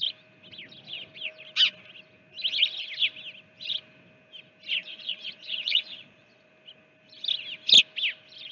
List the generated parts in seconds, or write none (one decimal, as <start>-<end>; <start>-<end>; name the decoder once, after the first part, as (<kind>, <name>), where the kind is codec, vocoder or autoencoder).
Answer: 4.8-6.5 (vocoder, Vocos)